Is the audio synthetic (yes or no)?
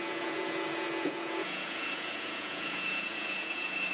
yes